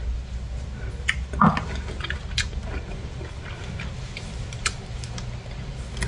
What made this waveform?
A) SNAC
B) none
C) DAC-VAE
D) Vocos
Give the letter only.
B